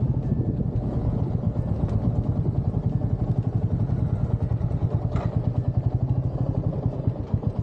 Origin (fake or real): real